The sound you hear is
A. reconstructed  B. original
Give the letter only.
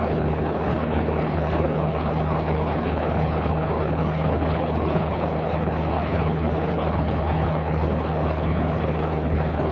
A